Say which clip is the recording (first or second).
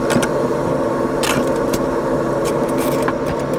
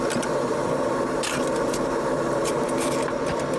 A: first